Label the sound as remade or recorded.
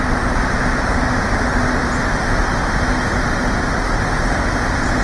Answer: recorded